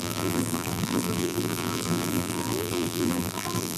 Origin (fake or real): fake